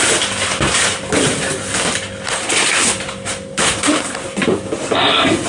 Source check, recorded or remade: recorded